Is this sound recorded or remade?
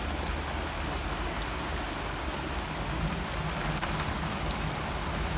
recorded